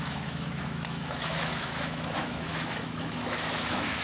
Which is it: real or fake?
fake